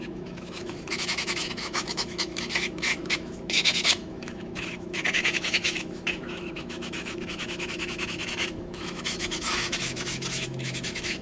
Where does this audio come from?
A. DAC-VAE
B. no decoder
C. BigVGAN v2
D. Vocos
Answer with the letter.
A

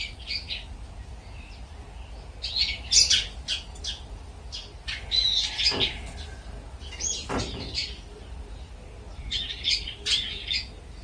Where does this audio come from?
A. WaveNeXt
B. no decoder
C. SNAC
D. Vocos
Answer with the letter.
B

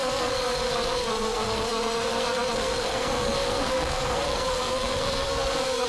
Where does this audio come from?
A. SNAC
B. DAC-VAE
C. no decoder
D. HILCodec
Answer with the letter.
A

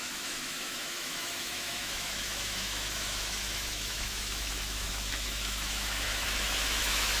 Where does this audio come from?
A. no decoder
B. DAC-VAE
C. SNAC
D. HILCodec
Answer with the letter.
B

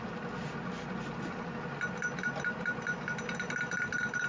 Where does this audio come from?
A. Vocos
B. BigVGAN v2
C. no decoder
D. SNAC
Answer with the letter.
C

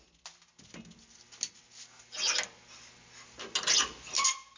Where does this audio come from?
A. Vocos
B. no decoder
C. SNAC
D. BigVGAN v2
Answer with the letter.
B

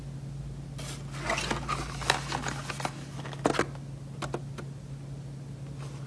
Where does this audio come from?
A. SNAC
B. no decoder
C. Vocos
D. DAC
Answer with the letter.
B